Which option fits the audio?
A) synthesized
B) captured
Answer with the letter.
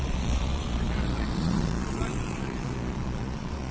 A